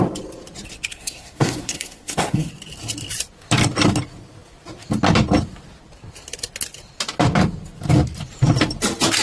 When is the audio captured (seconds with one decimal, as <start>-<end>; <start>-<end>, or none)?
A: 0.0-0.9; 2.5-9.2